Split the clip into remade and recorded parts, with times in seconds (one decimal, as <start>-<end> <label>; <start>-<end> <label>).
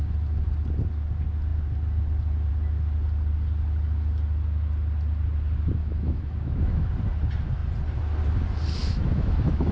0.0-5.8 recorded; 5.8-6.9 remade; 6.9-8.8 recorded; 8.8-9.7 remade